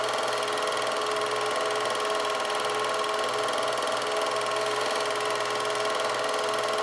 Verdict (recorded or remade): recorded